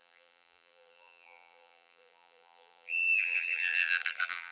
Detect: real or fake fake